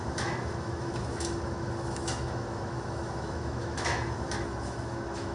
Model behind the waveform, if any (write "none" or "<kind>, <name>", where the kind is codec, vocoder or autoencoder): autoencoder, DAC-VAE